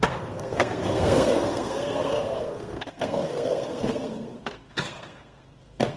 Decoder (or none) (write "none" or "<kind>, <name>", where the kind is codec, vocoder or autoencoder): codec, SNAC